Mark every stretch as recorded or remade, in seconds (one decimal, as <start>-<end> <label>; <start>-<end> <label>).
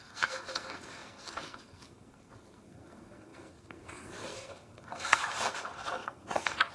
0.0-6.7 remade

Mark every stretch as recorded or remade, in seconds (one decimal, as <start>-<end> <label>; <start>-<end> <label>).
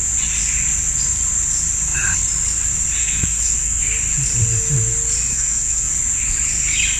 0.0-3.0 recorded; 3.0-3.8 remade; 3.8-5.3 recorded; 5.3-5.9 remade; 5.9-7.0 recorded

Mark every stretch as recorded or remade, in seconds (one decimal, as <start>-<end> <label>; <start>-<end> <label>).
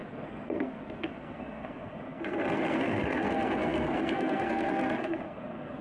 0.0-5.8 remade